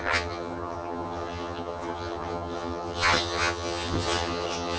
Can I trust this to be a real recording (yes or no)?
no